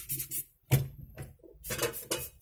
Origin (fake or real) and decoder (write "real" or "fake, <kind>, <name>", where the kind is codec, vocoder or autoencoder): real